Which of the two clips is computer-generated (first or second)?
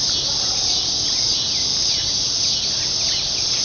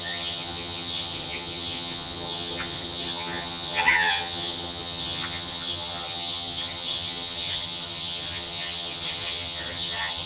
second